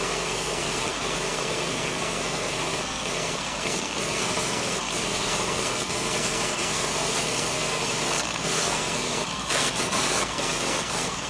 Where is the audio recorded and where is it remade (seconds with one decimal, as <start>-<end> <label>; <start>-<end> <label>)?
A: 0.0-11.3 remade